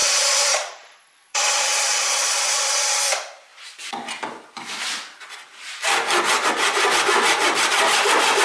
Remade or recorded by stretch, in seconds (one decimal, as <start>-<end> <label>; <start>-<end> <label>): 0.0-3.0 remade; 3.0-8.4 recorded